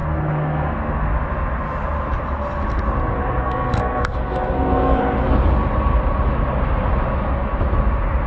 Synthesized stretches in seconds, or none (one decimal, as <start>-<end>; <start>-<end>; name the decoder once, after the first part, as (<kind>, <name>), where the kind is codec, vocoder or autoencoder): 0.0-1.1 (codec, SNAC); 3.2-5.0